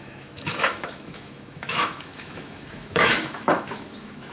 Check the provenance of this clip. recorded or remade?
remade